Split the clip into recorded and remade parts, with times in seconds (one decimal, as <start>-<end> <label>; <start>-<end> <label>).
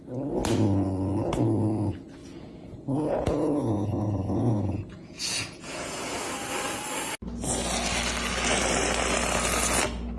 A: 0.0-2.2 recorded; 2.2-6.2 remade; 6.2-10.2 recorded